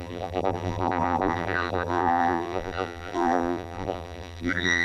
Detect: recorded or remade remade